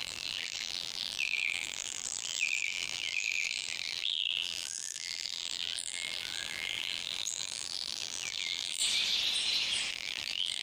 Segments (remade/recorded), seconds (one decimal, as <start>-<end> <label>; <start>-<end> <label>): 0.0-8.8 remade; 8.8-9.9 recorded; 9.9-10.6 remade

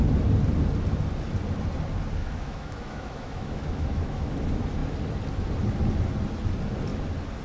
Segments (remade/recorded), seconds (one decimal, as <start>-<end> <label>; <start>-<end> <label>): 0.0-2.2 recorded; 2.2-4.3 remade; 4.3-7.4 recorded

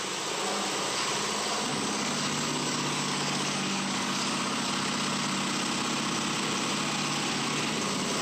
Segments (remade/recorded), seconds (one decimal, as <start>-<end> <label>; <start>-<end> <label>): 0.0-1.7 recorded; 1.7-4.7 remade; 4.7-8.2 recorded

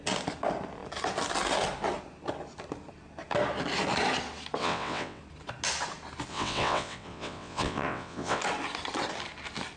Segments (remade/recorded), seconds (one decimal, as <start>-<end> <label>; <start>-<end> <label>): 0.0-4.6 recorded; 4.6-5.2 remade; 5.2-6.3 recorded; 6.3-8.4 remade; 8.4-9.8 recorded

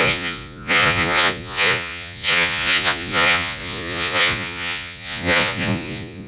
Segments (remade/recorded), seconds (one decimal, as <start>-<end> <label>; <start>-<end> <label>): 0.0-6.3 remade

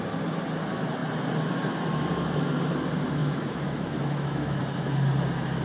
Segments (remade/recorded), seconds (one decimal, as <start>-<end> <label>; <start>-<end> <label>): 0.0-3.2 recorded; 3.2-4.6 remade; 4.6-5.6 recorded

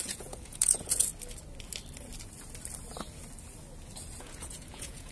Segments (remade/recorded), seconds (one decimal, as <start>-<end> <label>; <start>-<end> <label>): 0.0-1.1 remade; 1.1-4.2 recorded; 4.2-5.1 remade